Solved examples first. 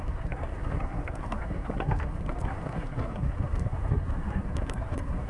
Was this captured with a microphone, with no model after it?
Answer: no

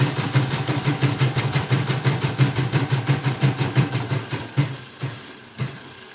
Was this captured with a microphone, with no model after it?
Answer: no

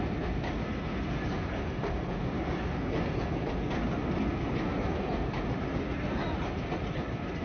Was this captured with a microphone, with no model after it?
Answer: yes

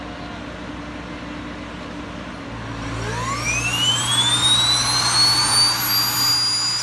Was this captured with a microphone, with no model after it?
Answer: yes